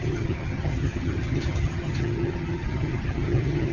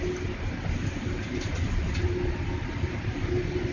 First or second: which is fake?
first